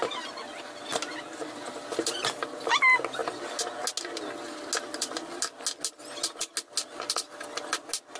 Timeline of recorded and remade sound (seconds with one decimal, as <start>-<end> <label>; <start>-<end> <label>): 0.0-8.2 recorded